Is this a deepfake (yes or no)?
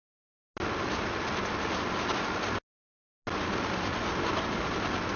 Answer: no